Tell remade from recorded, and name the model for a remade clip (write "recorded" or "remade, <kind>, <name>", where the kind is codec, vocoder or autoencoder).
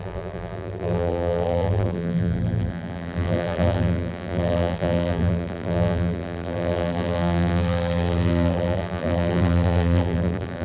remade, vocoder, BigVGAN v2